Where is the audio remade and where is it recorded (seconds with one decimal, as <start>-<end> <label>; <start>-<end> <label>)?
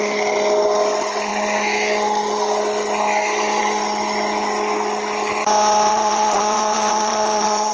0.0-5.9 recorded; 5.9-7.7 remade